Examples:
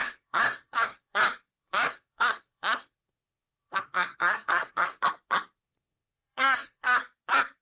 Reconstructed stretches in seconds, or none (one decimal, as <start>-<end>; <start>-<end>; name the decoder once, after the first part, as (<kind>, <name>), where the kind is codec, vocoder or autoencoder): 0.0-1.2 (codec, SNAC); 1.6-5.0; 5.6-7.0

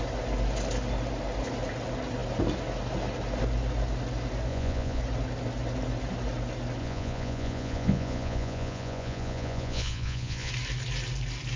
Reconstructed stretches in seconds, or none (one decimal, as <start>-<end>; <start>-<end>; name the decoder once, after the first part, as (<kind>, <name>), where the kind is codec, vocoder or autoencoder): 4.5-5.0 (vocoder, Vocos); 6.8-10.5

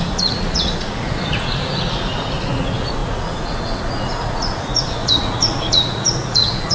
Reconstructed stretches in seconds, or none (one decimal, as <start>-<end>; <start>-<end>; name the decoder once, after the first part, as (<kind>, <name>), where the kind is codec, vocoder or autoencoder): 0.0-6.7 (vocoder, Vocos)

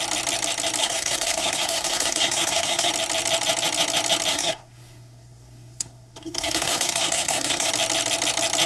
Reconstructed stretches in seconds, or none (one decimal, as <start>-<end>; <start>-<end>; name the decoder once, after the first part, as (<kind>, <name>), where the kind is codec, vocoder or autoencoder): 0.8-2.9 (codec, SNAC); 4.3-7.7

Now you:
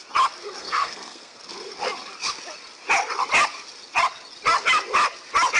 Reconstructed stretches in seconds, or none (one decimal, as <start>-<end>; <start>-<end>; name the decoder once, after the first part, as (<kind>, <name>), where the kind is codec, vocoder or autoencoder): 0.6-1.4 (codec, SNAC)

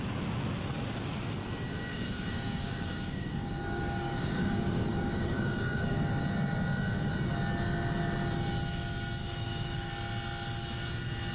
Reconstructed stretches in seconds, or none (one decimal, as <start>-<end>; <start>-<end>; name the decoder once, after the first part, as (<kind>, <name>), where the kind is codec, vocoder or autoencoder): 1.9-6.1 (codec, DAC); 9.2-9.9

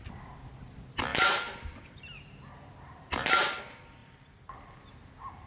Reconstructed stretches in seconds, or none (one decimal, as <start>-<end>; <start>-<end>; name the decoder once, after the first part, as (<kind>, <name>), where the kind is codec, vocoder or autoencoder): 1.1-3.6 (vocoder, BigVGAN v2); 4.0-5.5